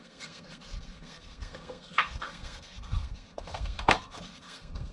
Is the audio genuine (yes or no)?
no